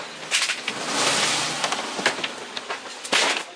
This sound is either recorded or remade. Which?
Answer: recorded